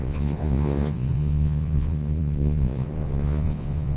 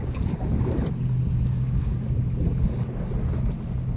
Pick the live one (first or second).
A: second